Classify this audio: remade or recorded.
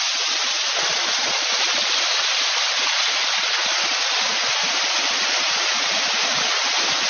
recorded